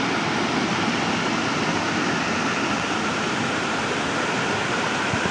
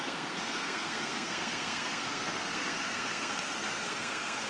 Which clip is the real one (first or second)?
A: first